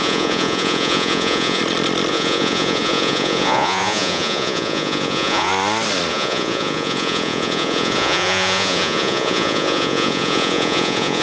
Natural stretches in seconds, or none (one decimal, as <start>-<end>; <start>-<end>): 1.6-2.1; 5.5-6.1